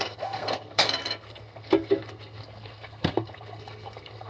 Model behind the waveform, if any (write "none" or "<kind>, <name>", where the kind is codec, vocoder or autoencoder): codec, SNAC